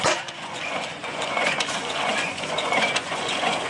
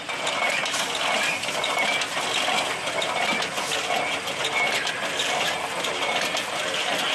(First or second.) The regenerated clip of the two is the first